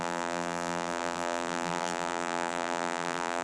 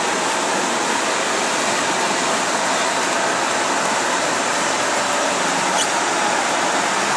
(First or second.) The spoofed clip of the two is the first